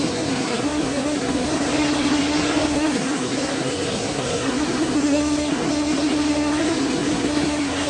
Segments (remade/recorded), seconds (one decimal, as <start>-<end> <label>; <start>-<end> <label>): 0.0-7.9 remade